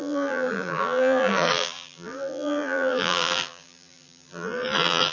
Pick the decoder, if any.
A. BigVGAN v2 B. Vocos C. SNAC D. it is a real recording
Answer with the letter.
A